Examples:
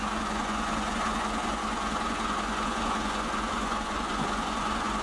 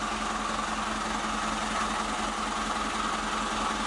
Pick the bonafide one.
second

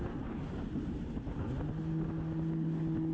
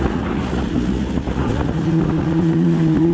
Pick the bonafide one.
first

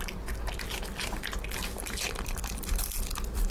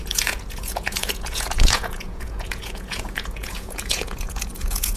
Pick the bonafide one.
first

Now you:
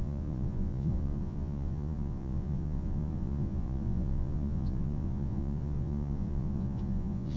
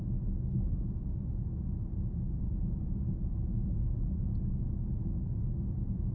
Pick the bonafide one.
second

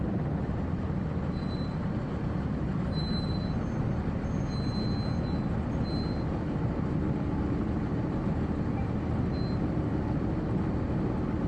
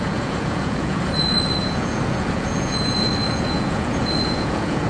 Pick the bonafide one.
first